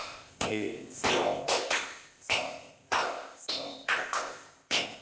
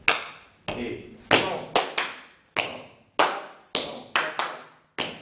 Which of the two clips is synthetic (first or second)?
first